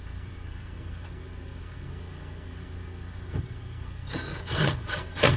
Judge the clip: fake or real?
fake